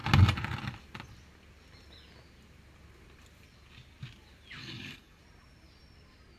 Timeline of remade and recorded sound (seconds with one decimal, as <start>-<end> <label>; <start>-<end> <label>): 0.0-4.6 recorded; 4.6-5.2 remade; 5.2-6.4 recorded